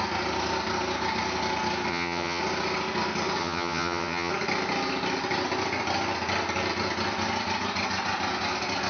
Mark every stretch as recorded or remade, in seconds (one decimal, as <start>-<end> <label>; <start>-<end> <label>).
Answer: 0.0-1.9 recorded; 1.9-2.4 remade; 2.4-3.4 recorded; 3.4-4.3 remade; 4.3-8.9 recorded